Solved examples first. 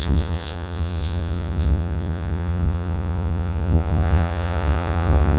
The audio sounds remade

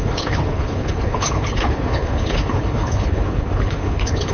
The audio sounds remade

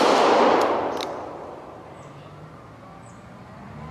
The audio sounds recorded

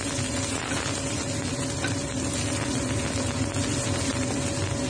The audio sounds recorded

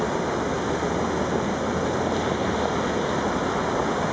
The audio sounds recorded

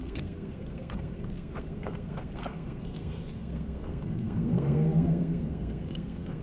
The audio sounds remade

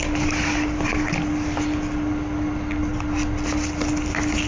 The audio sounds recorded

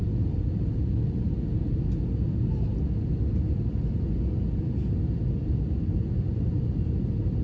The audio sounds recorded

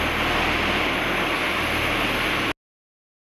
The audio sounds recorded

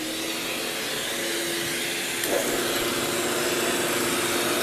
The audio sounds recorded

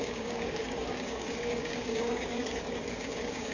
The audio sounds remade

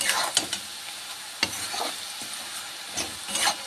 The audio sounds recorded